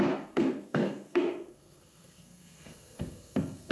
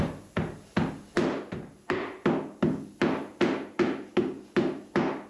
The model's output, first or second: first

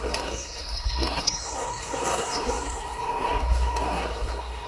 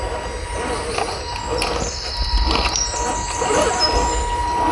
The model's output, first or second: first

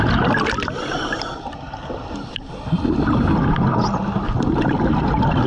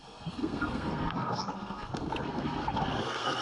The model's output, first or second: second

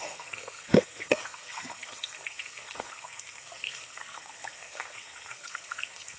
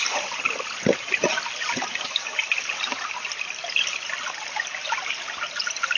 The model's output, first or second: first